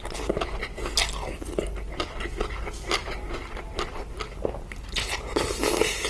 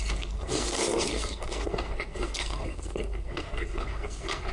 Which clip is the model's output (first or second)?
second